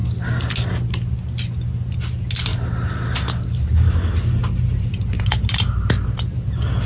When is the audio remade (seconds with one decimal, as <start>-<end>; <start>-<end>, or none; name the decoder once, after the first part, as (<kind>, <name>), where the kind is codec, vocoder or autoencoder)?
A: none